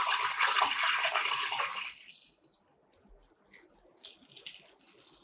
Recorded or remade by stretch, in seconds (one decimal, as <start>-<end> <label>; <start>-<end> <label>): 0.0-5.2 recorded